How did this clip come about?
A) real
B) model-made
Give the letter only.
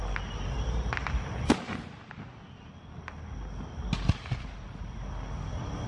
A